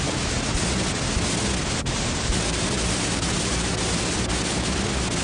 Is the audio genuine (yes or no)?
yes